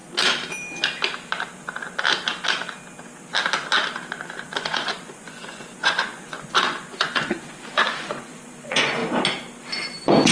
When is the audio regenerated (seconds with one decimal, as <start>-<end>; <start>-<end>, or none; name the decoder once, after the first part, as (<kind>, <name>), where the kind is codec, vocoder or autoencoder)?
4.5-9.0 (vocoder, Vocos); 9.6-10.3